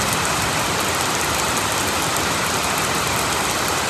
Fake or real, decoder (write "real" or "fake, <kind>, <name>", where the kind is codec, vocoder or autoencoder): real